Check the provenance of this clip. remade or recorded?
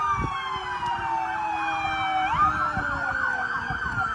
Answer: recorded